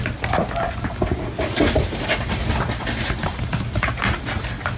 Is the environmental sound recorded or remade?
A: recorded